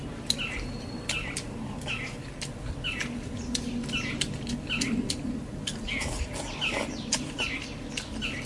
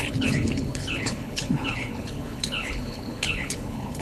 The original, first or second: first